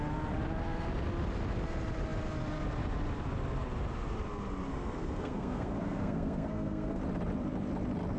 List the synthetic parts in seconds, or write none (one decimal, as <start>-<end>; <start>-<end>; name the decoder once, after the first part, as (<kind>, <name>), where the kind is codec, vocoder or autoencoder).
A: 4.7-7.0 (codec, SNAC)